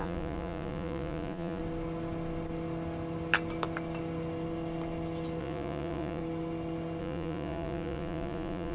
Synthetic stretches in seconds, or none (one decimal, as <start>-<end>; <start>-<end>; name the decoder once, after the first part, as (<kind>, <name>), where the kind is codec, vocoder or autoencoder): 0.0-1.6 (vocoder, Vocos); 5.4-6.2; 7.0-8.7